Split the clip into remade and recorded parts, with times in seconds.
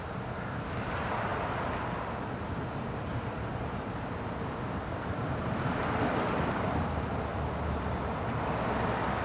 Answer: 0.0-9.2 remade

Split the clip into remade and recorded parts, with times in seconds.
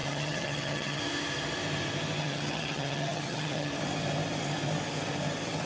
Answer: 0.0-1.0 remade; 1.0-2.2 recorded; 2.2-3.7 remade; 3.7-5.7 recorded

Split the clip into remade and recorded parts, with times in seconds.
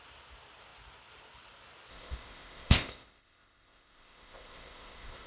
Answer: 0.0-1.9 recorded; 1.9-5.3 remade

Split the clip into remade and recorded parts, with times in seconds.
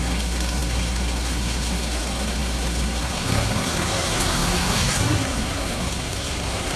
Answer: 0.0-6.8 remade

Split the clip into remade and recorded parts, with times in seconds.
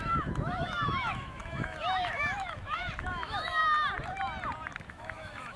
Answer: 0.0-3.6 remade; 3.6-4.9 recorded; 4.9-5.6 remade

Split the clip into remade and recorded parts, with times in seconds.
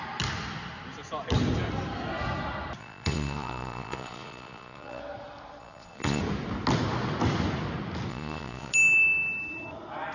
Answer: 0.0-2.8 recorded; 2.8-5.0 remade; 5.0-5.6 recorded; 5.6-6.2 remade; 6.2-8.1 recorded; 8.1-8.7 remade; 8.7-10.1 recorded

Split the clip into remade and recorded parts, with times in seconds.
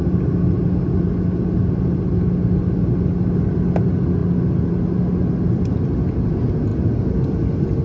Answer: 0.0-7.8 recorded